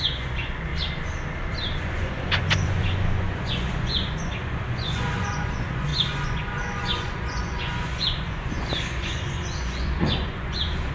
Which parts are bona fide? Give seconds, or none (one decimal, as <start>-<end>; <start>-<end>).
0.7-1.8